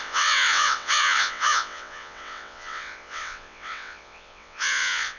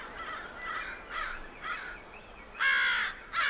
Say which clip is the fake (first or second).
first